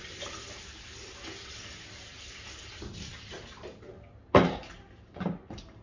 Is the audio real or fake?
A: real